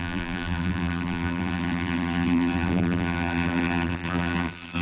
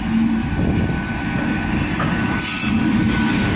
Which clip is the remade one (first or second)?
first